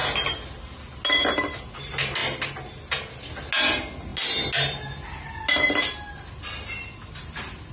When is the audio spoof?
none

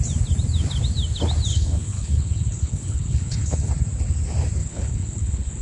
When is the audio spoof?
1.5-3.7 (codec, HILCodec); 4.6-5.6

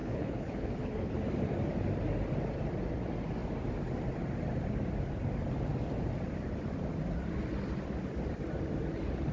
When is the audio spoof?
0.0-1.1 (codec, HILCodec)